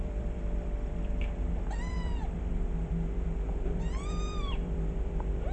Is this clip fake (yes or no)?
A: yes